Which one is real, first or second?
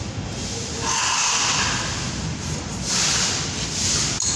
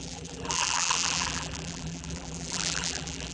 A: first